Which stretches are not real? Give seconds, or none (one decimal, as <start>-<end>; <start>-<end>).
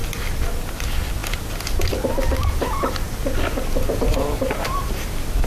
none